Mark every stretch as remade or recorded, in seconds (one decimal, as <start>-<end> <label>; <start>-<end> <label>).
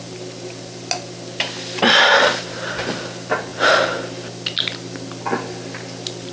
0.0-6.3 recorded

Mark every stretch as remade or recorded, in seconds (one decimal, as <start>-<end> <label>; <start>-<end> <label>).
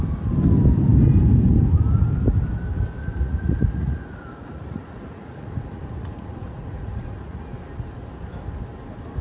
0.0-3.0 recorded; 3.0-7.4 remade; 7.4-9.2 recorded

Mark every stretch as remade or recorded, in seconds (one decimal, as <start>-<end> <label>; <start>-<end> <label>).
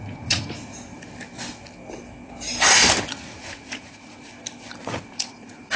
0.0-0.7 remade; 0.7-3.1 recorded; 3.1-4.3 remade; 4.3-4.8 recorded; 4.8-5.8 remade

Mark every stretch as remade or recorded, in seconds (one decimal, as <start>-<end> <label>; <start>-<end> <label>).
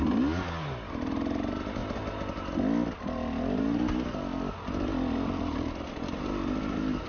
0.0-7.1 recorded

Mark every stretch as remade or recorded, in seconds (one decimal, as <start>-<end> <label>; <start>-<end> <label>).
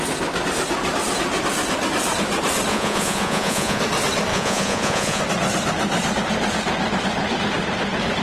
0.0-2.7 recorded; 2.7-3.8 remade; 3.8-4.3 recorded; 4.3-5.2 remade; 5.2-8.2 recorded